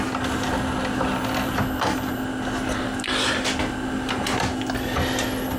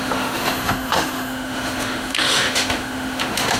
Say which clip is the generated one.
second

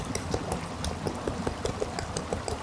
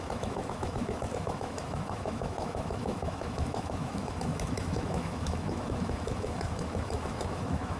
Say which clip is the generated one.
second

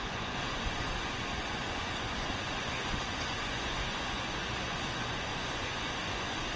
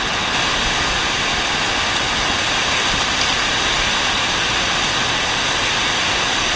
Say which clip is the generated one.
first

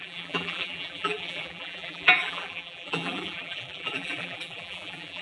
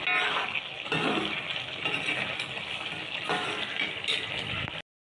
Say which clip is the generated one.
first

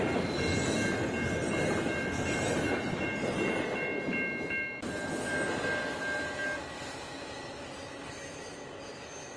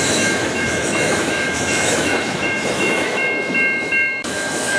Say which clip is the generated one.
second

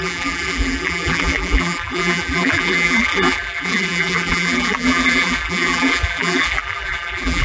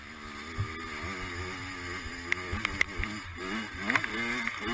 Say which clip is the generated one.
first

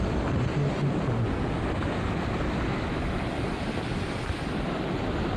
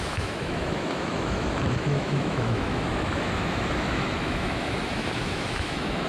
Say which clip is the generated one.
second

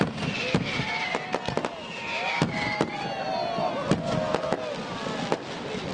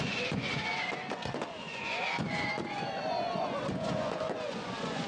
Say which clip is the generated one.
second